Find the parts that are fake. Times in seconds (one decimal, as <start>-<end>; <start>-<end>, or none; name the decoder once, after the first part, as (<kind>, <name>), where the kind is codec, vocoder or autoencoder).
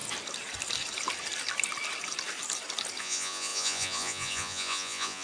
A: 3.0-5.2 (vocoder, Vocos)